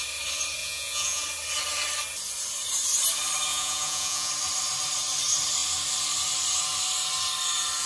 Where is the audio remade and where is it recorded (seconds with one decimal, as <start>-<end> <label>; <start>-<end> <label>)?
0.0-0.6 recorded; 0.6-1.2 remade; 1.2-3.5 recorded; 3.5-4.3 remade; 4.3-7.9 recorded